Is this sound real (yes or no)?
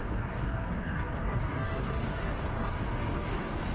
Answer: no